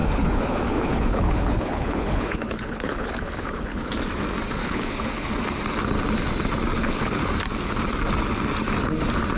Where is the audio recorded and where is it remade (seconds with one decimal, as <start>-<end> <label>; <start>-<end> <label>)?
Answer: 0.0-3.9 remade; 3.9-4.6 recorded; 4.6-5.3 remade; 5.3-6.8 recorded; 6.8-7.3 remade; 7.3-9.4 recorded